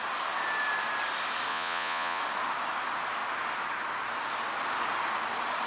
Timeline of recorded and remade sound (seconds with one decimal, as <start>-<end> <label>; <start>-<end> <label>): 0.0-1.5 recorded; 1.5-2.2 remade; 2.2-5.7 recorded